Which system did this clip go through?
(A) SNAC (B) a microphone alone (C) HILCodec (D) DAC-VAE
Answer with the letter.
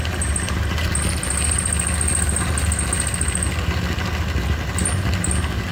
B